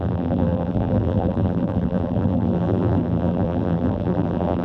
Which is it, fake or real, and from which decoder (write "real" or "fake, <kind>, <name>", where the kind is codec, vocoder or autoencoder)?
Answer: fake, vocoder, BigVGAN v2